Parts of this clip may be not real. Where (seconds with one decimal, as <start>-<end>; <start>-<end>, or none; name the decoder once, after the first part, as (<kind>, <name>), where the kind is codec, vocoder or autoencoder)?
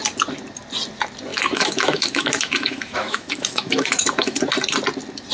1.3-4.4 (autoencoder, DAC-VAE)